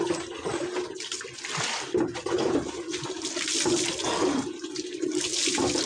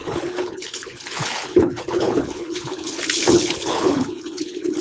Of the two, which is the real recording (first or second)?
first